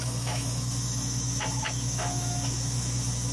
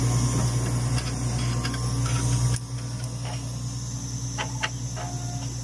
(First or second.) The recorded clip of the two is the second